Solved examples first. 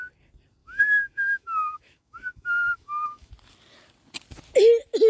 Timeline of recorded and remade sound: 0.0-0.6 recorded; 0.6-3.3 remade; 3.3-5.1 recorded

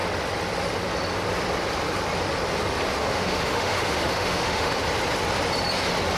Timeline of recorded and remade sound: 0.0-3.0 recorded; 3.0-4.7 remade; 4.7-6.2 recorded

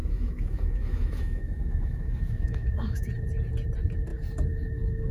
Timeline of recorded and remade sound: 0.0-3.1 remade; 3.1-5.1 recorded

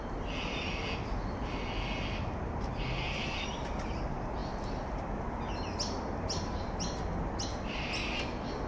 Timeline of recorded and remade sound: 0.0-8.7 recorded

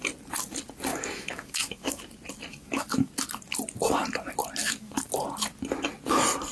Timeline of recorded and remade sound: 0.0-0.9 recorded; 0.9-2.0 remade; 2.0-2.5 recorded; 2.5-3.1 remade; 3.1-4.6 recorded; 4.6-5.1 remade; 5.1-6.5 recorded

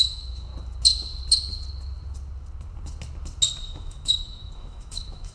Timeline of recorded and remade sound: 0.0-0.5 remade; 0.5-3.7 recorded; 3.7-5.3 remade